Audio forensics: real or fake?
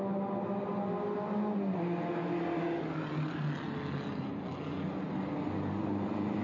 real